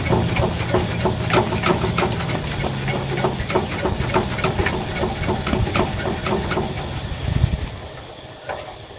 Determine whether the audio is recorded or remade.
recorded